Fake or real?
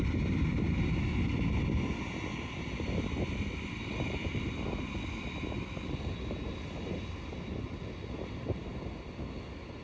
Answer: real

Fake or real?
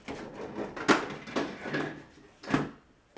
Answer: real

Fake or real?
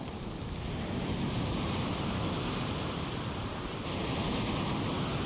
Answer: real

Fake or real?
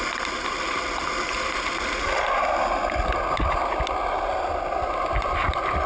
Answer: real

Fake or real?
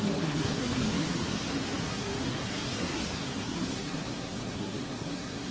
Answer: fake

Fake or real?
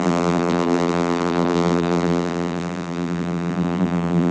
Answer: fake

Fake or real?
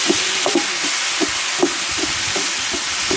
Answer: real